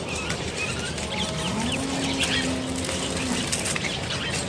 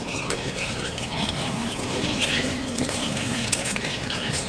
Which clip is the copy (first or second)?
second